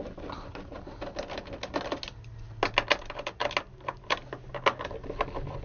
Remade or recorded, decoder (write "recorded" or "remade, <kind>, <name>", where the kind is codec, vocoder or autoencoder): recorded